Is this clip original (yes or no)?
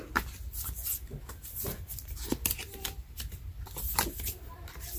yes